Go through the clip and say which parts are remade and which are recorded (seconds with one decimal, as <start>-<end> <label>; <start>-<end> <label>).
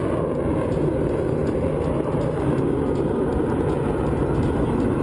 0.0-5.0 recorded